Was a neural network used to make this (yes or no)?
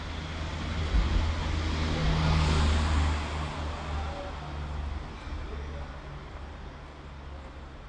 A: no